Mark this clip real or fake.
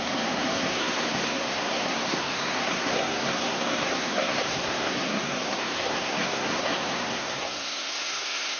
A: fake